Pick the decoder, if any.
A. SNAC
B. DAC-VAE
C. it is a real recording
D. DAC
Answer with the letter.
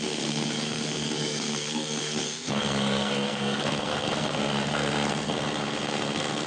A